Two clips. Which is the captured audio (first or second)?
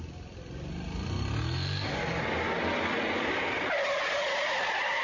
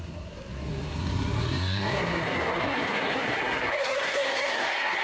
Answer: first